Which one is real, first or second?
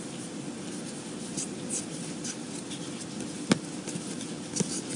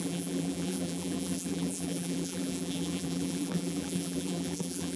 first